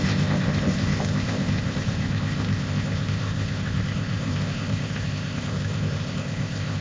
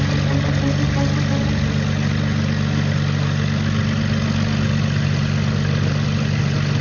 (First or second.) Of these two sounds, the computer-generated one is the first